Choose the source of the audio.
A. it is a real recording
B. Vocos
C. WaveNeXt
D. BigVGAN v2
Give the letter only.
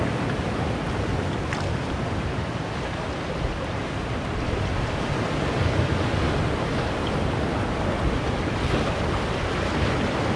A